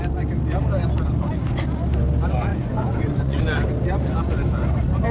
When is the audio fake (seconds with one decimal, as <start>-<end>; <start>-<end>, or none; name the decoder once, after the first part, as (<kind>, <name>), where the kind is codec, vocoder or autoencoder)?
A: 2.5-3.4 (vocoder, Vocos)